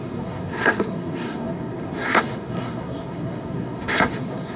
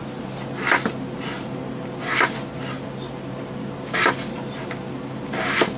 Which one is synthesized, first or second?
first